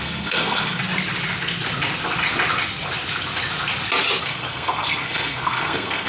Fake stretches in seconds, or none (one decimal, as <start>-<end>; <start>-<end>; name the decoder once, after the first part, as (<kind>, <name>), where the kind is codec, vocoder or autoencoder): 0.0-0.8 (codec, SNAC); 4.2-6.1